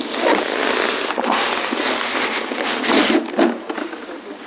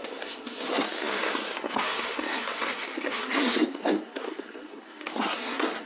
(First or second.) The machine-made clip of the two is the second